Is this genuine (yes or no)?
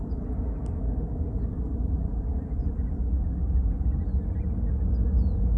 yes